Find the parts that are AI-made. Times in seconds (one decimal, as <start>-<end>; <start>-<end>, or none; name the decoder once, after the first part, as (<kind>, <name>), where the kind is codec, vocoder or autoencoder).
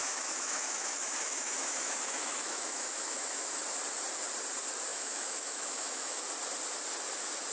0.0-3.6 (autoencoder, DAC-VAE); 4.9-6.2